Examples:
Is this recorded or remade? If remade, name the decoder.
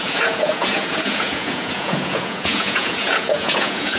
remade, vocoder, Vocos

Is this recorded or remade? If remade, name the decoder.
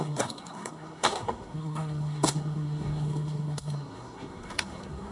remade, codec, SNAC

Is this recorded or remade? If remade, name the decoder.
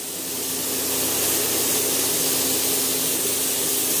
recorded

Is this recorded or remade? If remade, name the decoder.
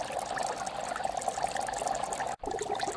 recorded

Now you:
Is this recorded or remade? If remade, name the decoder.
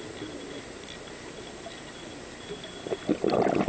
recorded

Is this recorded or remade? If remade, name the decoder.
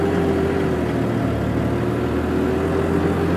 recorded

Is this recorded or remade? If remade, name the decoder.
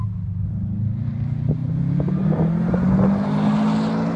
recorded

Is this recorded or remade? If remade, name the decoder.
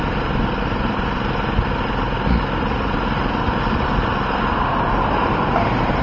recorded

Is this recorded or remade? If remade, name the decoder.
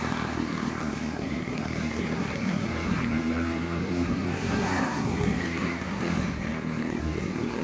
remade, codec, SNAC